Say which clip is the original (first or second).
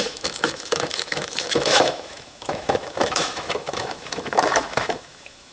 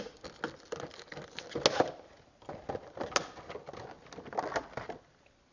second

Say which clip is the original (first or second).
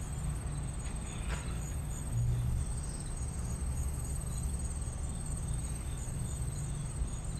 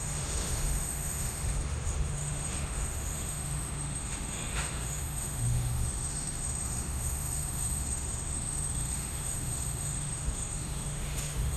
first